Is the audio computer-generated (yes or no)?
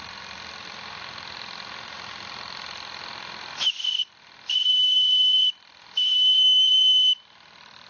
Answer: yes